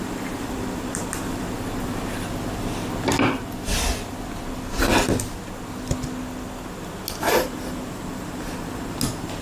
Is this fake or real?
real